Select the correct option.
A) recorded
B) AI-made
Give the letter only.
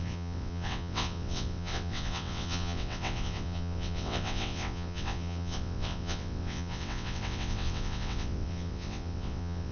B